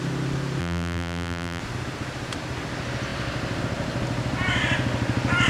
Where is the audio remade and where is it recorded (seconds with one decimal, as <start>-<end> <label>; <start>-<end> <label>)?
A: 0.0-0.6 recorded; 0.6-1.6 remade; 1.6-5.5 recorded